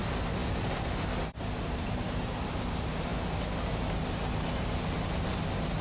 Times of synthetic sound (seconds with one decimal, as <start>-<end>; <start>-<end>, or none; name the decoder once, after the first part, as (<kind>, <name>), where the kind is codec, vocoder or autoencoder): none